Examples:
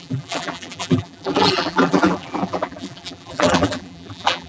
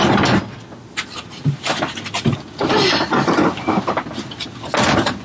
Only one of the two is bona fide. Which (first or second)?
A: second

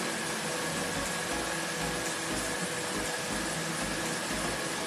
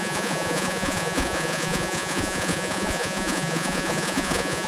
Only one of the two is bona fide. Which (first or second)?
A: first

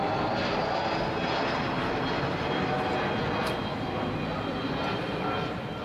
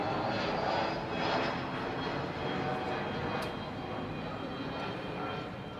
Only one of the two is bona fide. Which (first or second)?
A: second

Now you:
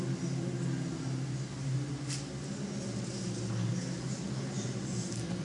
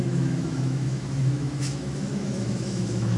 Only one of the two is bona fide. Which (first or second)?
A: first